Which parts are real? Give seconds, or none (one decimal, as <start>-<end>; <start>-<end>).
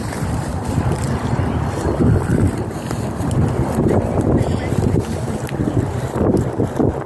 0.0-7.1